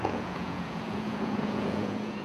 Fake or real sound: fake